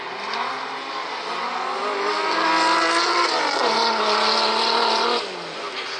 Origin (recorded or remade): recorded